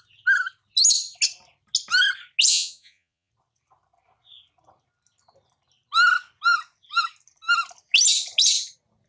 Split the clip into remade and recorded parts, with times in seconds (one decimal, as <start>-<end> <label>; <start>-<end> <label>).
0.0-2.5 recorded; 2.5-3.3 remade; 3.3-9.1 recorded